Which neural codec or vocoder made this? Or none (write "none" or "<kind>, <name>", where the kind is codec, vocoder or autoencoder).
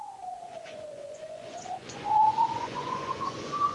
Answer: vocoder, Vocos